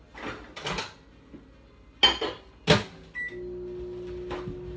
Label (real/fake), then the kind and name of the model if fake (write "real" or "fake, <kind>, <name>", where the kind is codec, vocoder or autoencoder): real